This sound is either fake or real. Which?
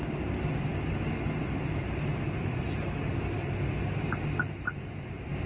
real